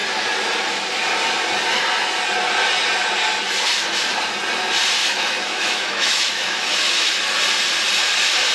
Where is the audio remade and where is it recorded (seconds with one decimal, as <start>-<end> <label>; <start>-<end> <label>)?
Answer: 0.0-5.0 recorded; 5.0-7.2 remade; 7.2-8.5 recorded